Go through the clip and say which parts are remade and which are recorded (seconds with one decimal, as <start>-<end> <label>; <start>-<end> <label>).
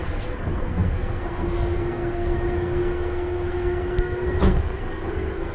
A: 0.0-5.5 remade